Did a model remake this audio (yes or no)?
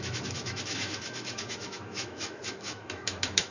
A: yes